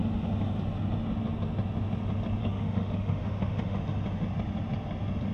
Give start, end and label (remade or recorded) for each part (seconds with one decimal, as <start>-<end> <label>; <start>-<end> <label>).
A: 0.0-2.4 recorded; 2.4-3.8 remade; 3.8-5.3 recorded